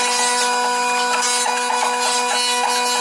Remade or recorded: recorded